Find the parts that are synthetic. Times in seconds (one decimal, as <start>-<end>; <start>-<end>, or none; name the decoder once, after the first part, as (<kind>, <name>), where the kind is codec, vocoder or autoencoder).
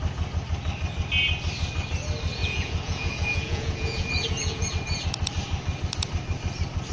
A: 2.4-4.7 (vocoder, Vocos)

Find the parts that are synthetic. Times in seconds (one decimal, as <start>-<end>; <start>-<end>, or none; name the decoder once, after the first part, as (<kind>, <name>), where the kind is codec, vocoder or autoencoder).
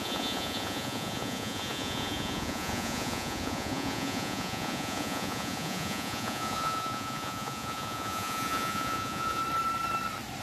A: 0.0-9.4 (vocoder, Vocos)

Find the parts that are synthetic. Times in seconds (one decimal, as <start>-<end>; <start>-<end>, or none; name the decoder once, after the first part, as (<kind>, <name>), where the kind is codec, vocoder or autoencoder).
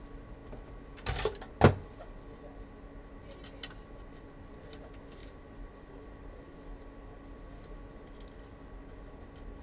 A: none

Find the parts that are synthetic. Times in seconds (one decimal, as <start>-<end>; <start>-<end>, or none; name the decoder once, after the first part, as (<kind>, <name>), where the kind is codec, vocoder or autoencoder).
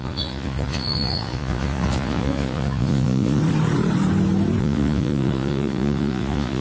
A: 0.0-3.4 (vocoder, Vocos); 4.6-6.6